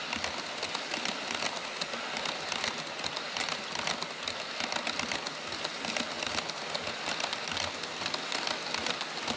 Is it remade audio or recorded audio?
recorded